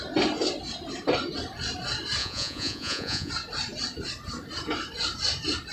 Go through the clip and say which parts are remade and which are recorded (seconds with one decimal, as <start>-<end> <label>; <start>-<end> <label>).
0.0-2.2 recorded; 2.2-3.3 remade; 3.3-5.7 recorded